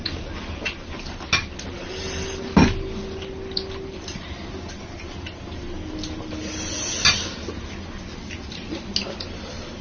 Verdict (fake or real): real